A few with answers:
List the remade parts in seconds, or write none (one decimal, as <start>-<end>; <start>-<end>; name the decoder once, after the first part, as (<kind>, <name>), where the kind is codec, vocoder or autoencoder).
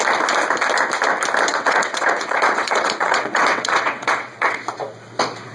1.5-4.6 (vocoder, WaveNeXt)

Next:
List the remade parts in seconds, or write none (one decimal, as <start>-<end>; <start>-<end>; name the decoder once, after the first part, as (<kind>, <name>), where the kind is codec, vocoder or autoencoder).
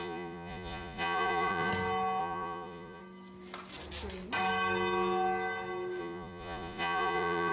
0.0-1.7 (vocoder, Vocos); 2.2-3.0; 6.0-7.5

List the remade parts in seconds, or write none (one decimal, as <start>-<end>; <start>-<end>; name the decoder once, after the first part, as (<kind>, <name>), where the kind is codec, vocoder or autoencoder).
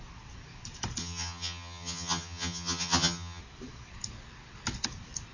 1.0-3.4 (vocoder, HiFi-GAN)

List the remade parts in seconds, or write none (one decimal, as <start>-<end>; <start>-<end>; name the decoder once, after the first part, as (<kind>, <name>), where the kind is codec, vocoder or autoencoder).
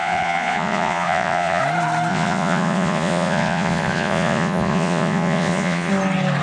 0.0-1.6 (vocoder, Vocos); 2.1-5.9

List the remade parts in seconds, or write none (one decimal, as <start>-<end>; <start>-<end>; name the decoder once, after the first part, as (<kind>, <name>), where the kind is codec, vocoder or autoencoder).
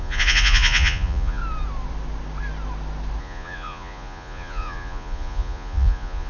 0.0-1.4 (vocoder, Vocos); 3.2-6.3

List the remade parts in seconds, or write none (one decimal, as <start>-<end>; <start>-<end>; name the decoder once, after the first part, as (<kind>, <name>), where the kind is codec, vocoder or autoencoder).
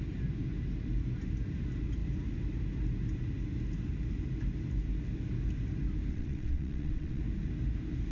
6.1-7.2 (vocoder, WaveNeXt)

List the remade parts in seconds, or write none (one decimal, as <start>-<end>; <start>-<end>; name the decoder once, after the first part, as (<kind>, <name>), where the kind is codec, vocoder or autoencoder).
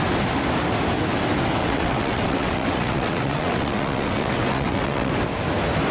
1.6-5.1 (vocoder, WaveNeXt)